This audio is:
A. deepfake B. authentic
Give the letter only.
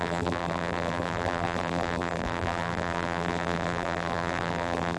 A